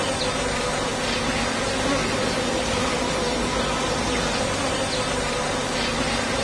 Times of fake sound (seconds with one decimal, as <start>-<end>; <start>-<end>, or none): none